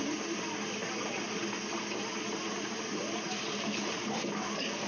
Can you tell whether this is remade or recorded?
recorded